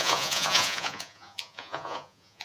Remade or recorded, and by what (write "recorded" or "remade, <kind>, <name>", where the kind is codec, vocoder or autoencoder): remade, vocoder, Vocos